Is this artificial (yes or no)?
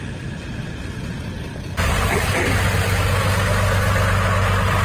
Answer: no